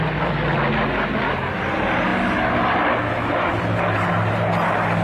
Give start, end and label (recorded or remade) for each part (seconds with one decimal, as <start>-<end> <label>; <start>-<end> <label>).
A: 0.0-5.0 recorded